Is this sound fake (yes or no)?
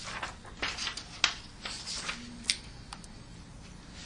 no